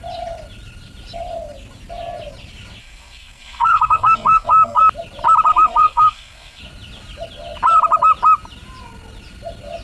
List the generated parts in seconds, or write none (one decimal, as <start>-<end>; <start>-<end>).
2.8-4.8; 5.5-6.6

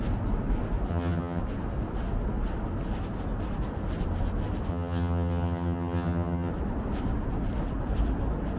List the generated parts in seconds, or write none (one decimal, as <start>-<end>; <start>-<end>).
0.9-1.4; 4.7-6.5